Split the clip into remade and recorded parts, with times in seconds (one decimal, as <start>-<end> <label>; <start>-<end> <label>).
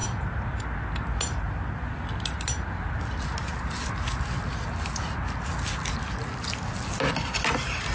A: 0.0-7.9 recorded